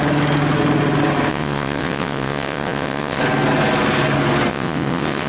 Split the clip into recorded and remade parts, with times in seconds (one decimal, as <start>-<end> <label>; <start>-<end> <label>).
0.0-1.3 recorded; 1.3-3.2 remade; 3.2-4.5 recorded; 4.5-5.3 remade